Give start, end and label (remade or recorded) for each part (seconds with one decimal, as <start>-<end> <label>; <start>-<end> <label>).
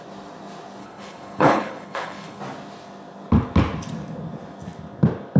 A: 0.0-0.8 recorded; 0.8-2.4 remade; 2.4-5.4 recorded